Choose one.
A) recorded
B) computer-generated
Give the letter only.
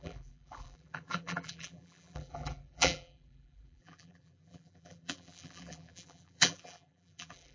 B